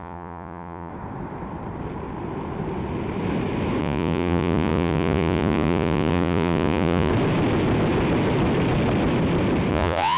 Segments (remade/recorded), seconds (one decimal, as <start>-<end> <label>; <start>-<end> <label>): 0.0-0.9 remade; 0.9-3.8 recorded; 3.8-7.1 remade; 7.1-9.7 recorded; 9.7-10.2 remade